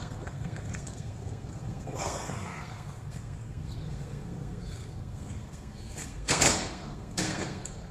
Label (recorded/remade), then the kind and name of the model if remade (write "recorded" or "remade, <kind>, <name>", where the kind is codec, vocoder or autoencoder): remade, codec, SNAC